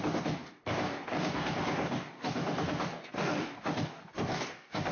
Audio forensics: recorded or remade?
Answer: remade